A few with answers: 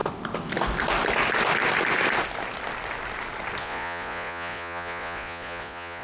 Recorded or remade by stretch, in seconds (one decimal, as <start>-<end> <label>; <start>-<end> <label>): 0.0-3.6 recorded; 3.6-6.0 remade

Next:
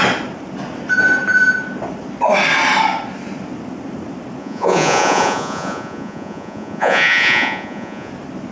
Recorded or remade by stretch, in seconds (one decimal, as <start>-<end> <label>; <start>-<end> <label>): 0.0-4.4 recorded; 4.4-8.1 remade; 8.1-8.5 recorded

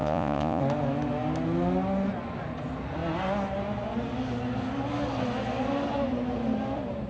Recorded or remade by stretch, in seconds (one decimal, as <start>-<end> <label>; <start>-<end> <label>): 0.0-0.6 remade; 0.6-7.1 recorded